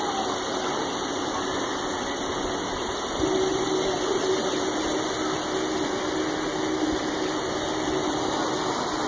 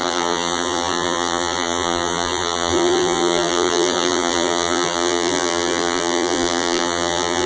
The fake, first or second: second